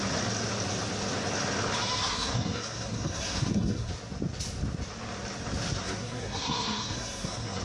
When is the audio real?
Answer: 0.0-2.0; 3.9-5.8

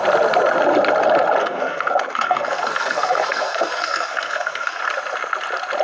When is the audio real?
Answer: 0.0-1.4; 4.8-5.8

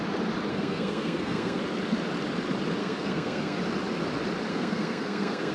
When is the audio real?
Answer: 0.0-0.5; 1.6-2.8; 3.6-4.5

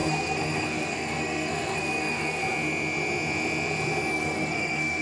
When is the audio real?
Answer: 2.4-4.1

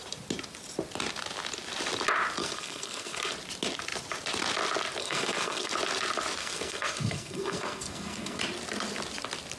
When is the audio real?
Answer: 0.0-2.4; 3.3-5.0; 5.7-6.4; 8.4-9.6

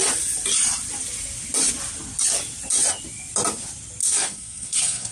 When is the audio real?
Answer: 0.0-4.0

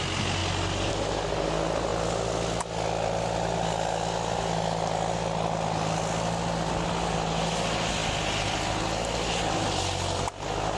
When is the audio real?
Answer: 0.0-10.8